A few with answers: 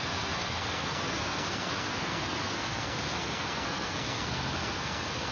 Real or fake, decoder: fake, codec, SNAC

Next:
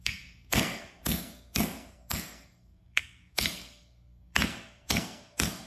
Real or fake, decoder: fake, codec, SNAC